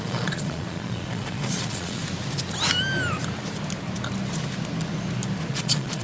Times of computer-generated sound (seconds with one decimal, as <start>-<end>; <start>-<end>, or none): 0.0-2.0; 5.5-6.0